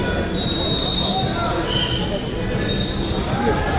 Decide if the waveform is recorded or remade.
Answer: recorded